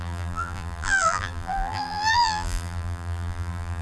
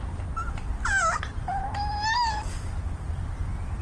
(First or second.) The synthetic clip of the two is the first